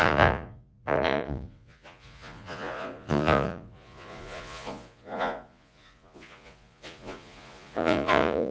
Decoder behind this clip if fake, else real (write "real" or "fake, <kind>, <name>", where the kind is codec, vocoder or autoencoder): fake, vocoder, Vocos